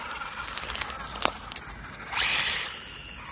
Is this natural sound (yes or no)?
yes